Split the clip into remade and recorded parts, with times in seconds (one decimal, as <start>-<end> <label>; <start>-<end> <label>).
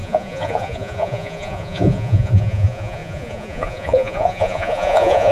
0.0-5.3 remade